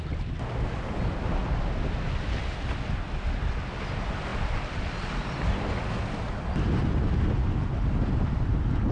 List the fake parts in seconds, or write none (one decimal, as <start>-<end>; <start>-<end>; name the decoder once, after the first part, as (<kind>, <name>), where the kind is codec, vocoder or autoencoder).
none